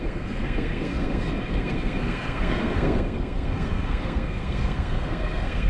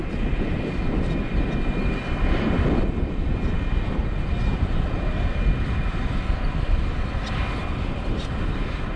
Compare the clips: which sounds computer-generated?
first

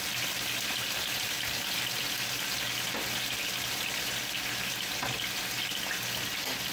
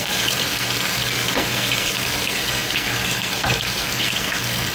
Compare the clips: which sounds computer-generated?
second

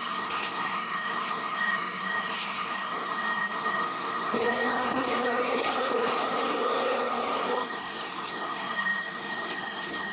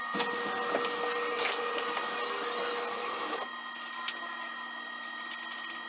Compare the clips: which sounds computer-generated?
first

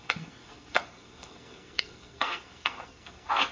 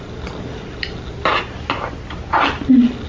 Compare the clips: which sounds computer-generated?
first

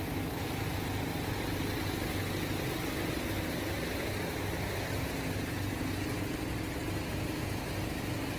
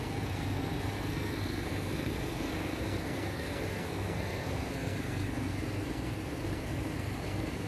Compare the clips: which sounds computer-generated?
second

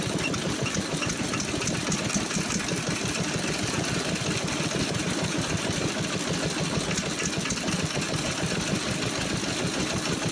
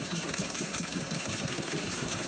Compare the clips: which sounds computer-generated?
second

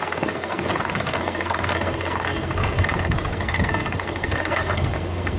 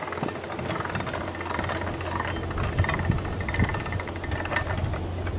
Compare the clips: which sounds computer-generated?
first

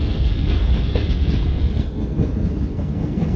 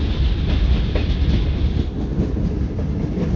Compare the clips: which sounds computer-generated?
first